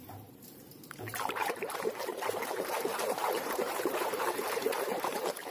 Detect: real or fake fake